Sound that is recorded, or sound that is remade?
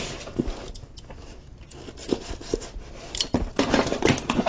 recorded